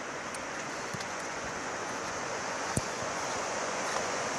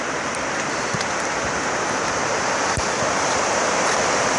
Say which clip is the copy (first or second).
first